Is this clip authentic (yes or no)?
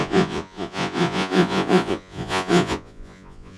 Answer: no